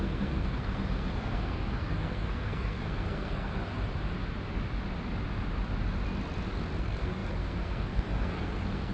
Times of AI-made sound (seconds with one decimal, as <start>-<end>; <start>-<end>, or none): 0.0-3.7; 6.8-8.9